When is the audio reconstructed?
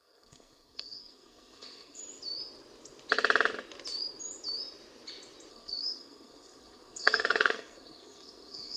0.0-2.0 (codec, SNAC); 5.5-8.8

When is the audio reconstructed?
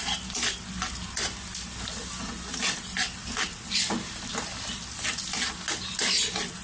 none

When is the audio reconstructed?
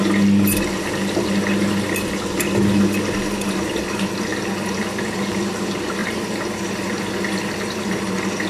6.0-7.8 (vocoder, BigVGAN v2)